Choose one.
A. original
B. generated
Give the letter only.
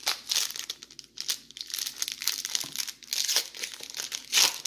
A